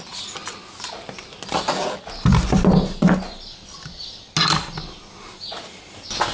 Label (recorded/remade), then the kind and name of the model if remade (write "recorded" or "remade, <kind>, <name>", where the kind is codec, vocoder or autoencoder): recorded